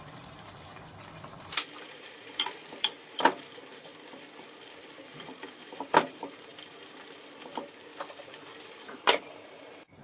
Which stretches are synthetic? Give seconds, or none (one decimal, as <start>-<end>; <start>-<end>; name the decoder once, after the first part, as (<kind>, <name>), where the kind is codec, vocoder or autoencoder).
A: 0.0-3.6 (vocoder, BigVGAN v2); 5.0-6.5; 8.9-10.0